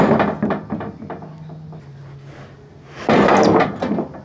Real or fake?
real